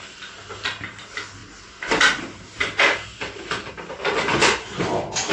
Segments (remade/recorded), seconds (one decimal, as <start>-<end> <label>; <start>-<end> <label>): 0.0-4.3 recorded; 4.3-4.8 remade; 4.8-5.3 recorded